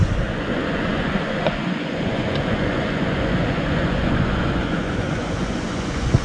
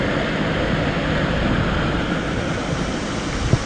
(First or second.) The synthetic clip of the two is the first